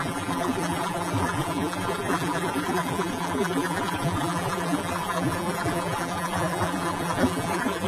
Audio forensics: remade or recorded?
remade